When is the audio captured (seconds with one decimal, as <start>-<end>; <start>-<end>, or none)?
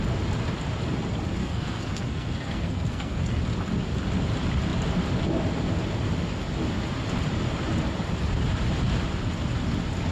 0.0-1.4; 3.4-10.1